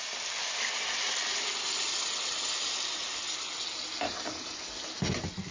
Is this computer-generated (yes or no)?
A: no